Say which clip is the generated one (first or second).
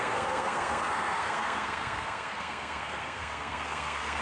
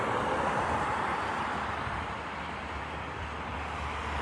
first